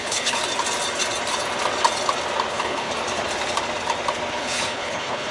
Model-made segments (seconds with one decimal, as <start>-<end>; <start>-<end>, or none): 0.0-0.4; 2.5-2.9; 4.4-5.3